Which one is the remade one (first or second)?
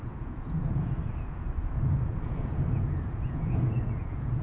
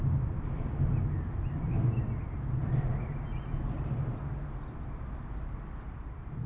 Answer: first